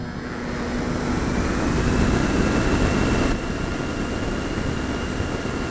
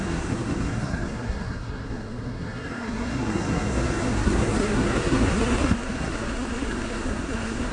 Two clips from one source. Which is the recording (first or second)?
first